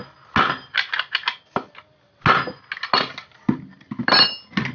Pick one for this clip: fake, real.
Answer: real